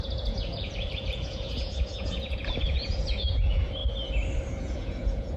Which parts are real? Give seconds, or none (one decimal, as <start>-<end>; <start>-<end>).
3.8-4.6